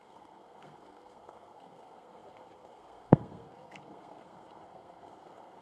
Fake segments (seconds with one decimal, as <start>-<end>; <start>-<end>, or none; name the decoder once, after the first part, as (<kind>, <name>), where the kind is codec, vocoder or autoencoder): 0.0-5.6 (codec, SNAC)